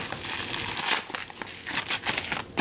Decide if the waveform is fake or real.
real